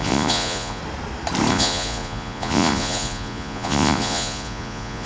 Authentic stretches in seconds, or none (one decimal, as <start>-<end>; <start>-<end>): 0.8-1.5